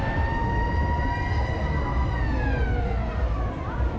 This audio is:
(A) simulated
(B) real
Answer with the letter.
B